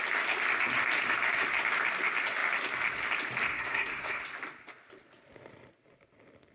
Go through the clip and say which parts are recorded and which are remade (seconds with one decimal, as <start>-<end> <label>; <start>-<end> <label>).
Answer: 0.0-3.5 recorded; 3.5-4.2 remade; 4.2-6.5 recorded